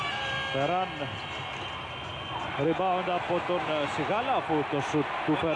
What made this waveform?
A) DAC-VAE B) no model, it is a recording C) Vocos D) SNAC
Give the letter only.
B